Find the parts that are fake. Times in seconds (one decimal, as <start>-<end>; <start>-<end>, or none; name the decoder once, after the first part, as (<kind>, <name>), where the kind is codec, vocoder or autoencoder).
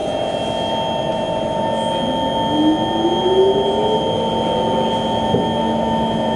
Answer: none